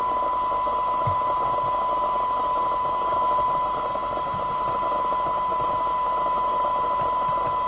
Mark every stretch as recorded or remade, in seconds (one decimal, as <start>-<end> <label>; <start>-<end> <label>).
0.0-7.7 recorded